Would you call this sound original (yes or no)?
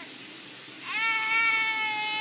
yes